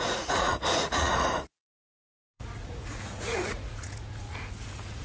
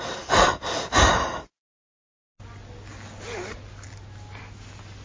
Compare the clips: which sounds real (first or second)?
second